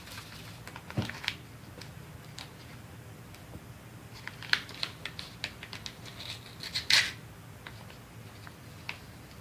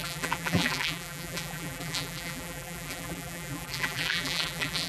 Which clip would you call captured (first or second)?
first